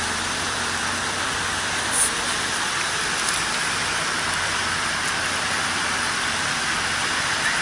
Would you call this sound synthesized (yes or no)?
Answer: yes